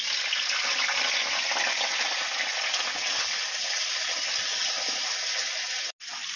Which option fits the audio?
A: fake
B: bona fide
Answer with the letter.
B